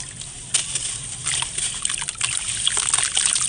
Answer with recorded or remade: recorded